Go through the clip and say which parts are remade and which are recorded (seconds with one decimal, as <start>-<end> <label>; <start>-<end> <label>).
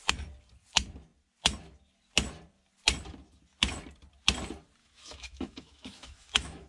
0.0-4.8 recorded; 4.8-6.7 remade